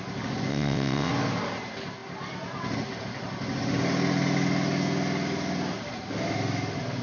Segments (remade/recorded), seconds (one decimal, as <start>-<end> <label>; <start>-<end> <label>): 0.0-0.5 recorded; 0.5-1.1 remade; 1.1-7.0 recorded